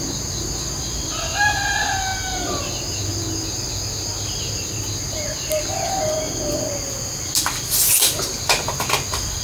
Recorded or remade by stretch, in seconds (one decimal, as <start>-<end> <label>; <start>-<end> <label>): 0.0-9.4 recorded